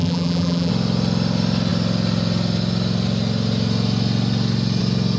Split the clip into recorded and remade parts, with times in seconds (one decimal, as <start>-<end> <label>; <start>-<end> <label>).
0.0-0.7 remade; 0.7-5.2 recorded